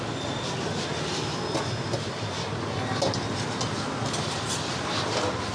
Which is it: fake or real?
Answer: real